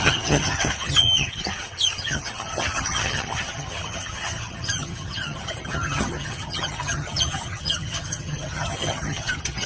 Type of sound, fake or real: fake